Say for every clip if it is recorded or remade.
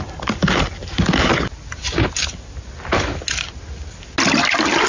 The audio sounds recorded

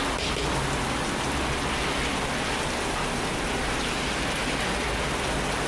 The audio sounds recorded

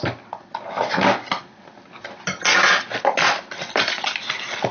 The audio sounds recorded